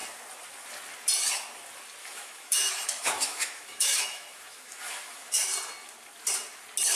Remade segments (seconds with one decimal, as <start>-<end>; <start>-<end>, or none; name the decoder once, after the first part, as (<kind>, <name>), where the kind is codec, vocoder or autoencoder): 2.0-5.5 (autoencoder, DAC-VAE)